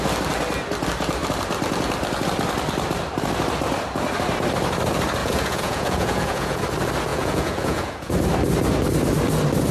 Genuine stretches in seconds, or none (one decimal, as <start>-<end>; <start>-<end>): 0.0-5.2; 6.6-7.1; 8.1-9.7